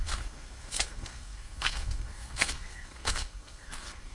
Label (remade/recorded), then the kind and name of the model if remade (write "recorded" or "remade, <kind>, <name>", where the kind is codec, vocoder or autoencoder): remade, codec, SNAC